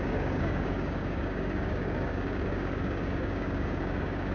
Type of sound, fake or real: fake